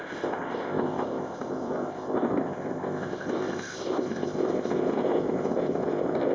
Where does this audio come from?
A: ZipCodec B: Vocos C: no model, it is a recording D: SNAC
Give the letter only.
A